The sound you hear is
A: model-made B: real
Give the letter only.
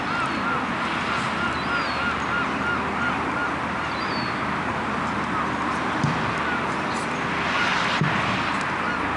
B